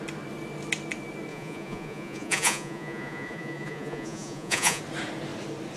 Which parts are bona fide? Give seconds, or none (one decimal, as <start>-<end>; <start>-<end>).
0.0-1.3; 4.8-5.8